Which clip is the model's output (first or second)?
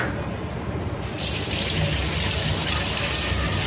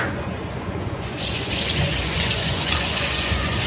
second